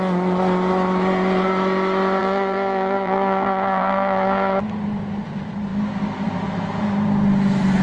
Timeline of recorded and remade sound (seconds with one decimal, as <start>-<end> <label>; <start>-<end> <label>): 0.0-2.2 recorded; 2.2-4.6 remade; 4.6-7.8 recorded